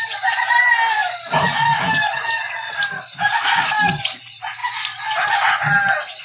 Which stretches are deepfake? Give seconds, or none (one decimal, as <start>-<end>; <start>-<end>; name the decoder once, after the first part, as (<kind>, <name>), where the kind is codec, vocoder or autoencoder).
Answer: 4.6-5.5 (vocoder, BigVGAN v2)